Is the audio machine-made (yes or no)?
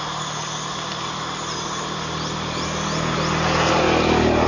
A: no